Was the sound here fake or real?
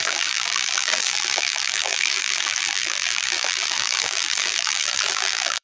fake